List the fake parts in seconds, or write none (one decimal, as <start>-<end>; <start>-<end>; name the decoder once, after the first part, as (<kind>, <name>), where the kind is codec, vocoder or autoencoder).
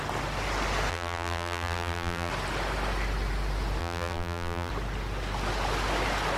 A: 0.9-2.3 (vocoder, BigVGAN v2); 3.8-4.7